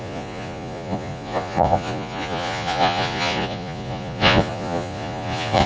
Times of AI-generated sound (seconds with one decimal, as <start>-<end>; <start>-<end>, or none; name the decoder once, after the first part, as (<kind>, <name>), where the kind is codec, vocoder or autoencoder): 0.0-5.7 (vocoder, Vocos)